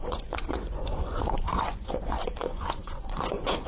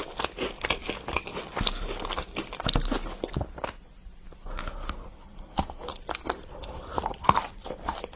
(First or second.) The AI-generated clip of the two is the first